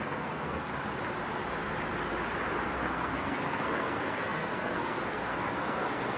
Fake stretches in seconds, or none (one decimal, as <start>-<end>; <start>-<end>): 0.0-0.7; 2.7-6.2

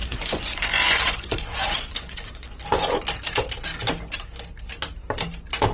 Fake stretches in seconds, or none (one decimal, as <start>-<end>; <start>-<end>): 0.0-2.6

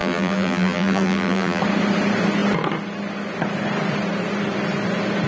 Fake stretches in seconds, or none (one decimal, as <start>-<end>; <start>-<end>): 0.0-1.6

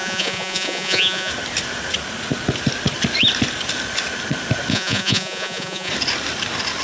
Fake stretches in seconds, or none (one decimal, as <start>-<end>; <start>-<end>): 0.0-1.3; 4.7-5.9

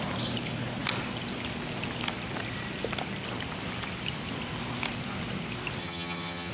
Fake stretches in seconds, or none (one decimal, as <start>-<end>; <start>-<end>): 5.8-6.5

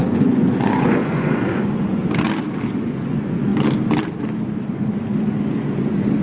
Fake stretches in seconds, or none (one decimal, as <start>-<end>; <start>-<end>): 0.0-2.0; 2.7-3.5; 5.5-6.2